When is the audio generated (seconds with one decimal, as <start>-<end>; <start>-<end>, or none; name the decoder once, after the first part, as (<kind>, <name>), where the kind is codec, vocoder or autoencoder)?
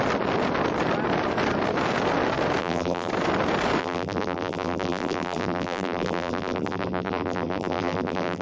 2.6-3.1 (vocoder, BigVGAN v2); 3.8-8.4